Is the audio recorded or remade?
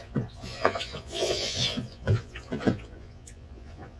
remade